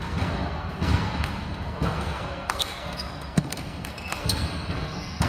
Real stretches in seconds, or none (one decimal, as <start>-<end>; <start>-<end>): none